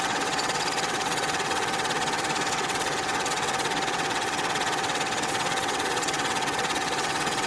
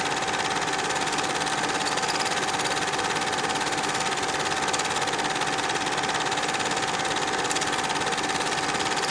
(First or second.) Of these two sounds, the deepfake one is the first